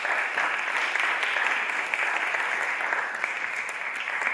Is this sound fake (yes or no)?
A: no